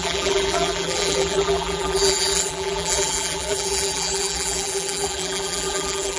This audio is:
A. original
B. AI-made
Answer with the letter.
B